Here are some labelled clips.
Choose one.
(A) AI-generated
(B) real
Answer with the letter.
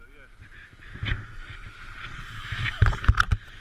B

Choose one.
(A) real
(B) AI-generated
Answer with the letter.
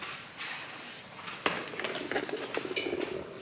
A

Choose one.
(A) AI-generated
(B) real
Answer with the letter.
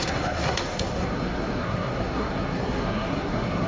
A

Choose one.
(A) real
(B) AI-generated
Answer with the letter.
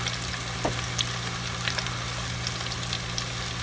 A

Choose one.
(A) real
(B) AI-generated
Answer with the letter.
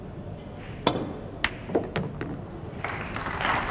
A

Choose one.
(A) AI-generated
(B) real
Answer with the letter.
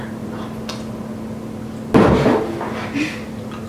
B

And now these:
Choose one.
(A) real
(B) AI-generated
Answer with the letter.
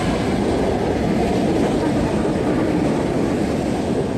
A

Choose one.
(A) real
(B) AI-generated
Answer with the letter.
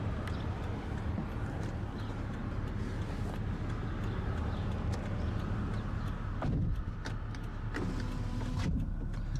A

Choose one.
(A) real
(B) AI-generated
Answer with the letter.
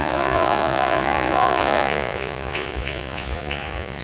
B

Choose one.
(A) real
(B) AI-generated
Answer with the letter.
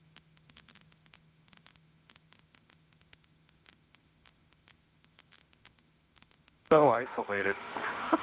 B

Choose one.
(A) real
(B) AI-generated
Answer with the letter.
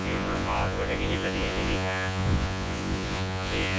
B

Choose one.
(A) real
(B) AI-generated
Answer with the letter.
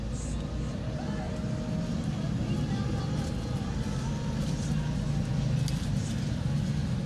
A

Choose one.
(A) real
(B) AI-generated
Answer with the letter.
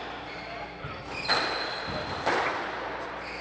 A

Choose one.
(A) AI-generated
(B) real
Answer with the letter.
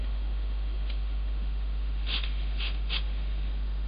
A